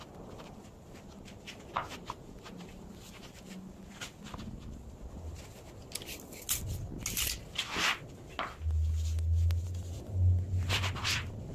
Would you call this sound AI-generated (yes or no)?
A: no